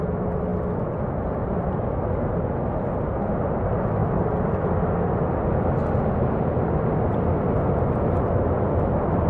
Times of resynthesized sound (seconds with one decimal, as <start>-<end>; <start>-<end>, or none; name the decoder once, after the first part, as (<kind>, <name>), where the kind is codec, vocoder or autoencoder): none